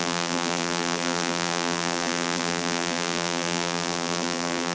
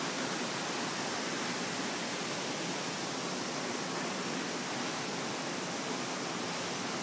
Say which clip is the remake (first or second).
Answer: first